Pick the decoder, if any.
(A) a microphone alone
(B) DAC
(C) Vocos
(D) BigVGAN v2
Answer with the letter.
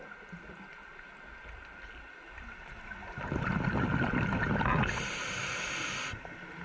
A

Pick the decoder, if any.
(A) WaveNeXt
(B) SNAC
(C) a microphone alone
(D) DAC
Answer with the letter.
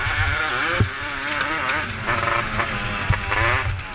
C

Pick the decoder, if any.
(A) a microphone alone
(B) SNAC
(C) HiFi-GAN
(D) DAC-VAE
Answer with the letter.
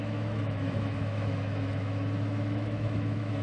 D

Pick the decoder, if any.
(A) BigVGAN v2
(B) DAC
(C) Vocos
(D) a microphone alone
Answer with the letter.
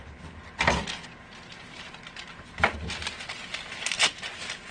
D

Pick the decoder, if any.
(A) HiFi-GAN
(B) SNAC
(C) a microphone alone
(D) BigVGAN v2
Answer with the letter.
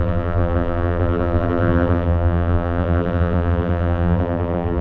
D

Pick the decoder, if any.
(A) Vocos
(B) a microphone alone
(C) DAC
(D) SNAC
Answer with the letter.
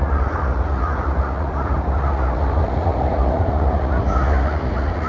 A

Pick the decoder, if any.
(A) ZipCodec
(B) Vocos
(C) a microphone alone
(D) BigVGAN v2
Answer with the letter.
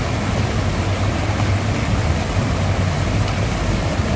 C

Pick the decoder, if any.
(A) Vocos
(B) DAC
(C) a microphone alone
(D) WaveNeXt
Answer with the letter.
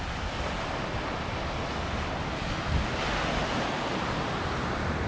C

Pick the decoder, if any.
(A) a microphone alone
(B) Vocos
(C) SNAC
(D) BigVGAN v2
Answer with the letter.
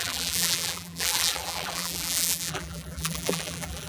D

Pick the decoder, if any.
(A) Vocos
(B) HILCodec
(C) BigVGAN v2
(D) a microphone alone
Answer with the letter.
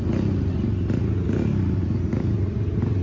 D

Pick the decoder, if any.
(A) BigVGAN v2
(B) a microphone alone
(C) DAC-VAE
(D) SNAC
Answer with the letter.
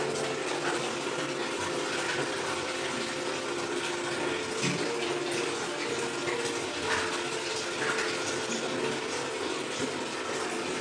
B